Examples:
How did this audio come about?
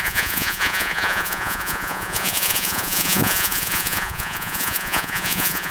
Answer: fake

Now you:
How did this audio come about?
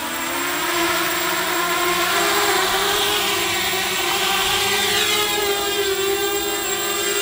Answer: real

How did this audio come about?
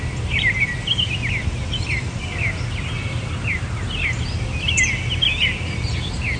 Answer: real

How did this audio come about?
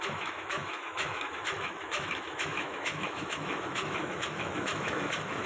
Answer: fake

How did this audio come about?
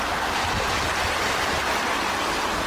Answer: real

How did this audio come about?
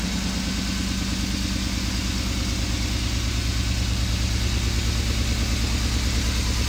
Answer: real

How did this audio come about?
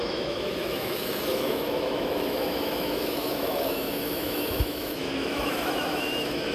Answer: fake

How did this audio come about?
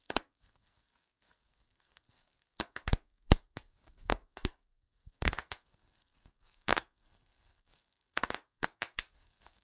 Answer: fake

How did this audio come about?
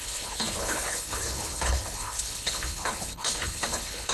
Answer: fake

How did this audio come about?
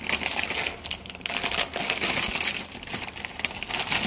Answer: real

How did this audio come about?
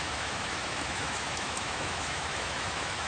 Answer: fake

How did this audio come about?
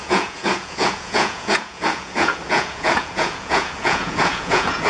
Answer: fake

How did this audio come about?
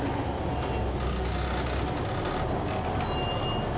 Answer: real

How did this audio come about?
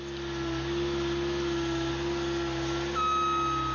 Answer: real